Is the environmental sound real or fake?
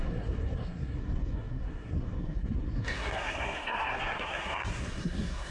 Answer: fake